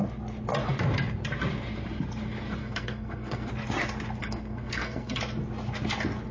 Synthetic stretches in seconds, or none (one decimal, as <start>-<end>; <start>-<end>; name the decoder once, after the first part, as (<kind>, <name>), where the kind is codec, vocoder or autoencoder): 2.6-3.5 (codec, SNAC); 4.2-5.2